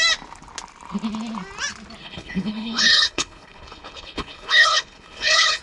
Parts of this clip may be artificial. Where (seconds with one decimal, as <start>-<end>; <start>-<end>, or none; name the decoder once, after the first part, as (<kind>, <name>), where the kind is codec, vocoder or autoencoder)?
2.0-5.6 (codec, HILCodec)